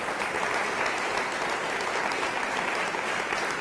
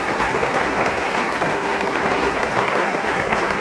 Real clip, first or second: first